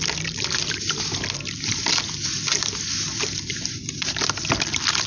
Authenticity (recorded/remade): recorded